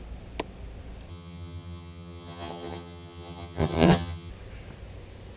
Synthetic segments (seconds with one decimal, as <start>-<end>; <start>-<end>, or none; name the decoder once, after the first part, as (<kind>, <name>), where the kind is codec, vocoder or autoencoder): 1.1-4.3 (vocoder, HiFi-GAN)